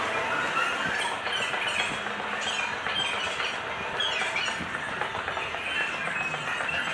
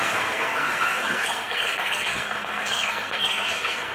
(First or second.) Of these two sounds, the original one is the first